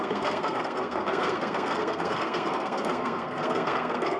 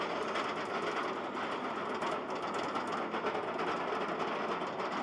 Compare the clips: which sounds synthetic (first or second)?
first